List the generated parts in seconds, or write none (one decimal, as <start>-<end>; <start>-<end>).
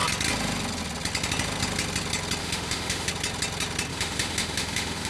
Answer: 2.4-3.1; 3.9-5.1